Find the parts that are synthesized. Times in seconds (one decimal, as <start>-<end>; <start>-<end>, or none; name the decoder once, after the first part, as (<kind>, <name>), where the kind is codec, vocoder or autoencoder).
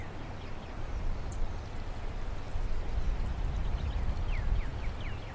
none